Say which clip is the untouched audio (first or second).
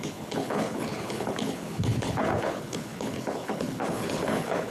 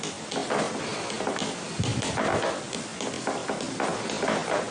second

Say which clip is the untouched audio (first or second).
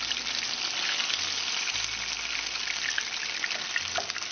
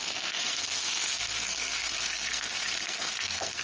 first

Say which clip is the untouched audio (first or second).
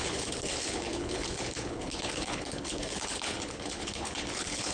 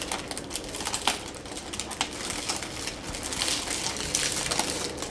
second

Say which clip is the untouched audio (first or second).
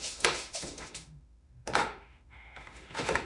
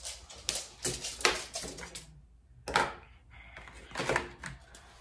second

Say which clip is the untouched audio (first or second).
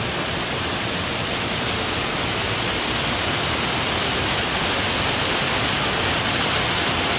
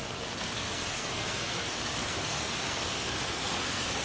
first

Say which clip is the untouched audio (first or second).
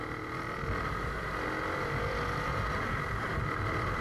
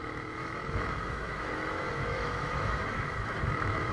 first